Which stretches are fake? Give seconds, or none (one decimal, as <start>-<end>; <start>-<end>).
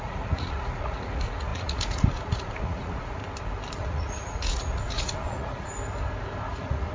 0.0-3.2; 3.7-5.7; 6.5-6.9